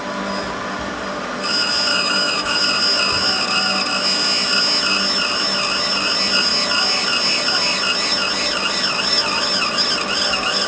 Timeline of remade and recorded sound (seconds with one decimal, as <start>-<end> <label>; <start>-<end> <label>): 0.0-1.9 recorded; 1.9-2.6 remade; 2.6-10.7 recorded